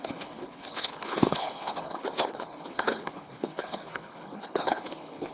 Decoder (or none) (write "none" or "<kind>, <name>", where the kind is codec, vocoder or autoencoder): codec, HILCodec